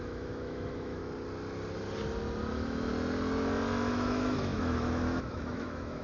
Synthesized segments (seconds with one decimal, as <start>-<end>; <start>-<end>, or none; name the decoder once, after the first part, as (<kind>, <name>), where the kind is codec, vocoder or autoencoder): 0.0-1.0 (autoencoder, DAC-VAE); 2.5-2.9; 3.9-6.0